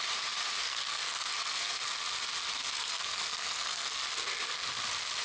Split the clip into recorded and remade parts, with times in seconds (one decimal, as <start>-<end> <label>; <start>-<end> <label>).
0.0-0.6 recorded; 0.6-1.8 remade; 1.8-2.5 recorded; 2.5-4.0 remade; 4.0-5.2 recorded